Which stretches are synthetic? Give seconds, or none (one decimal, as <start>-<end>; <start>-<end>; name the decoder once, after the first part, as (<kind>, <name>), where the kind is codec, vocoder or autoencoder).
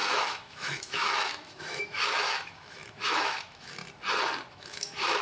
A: 0.0-3.8 (autoencoder, DAC-VAE); 4.5-5.2